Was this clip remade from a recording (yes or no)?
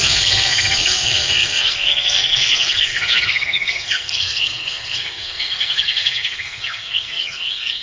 yes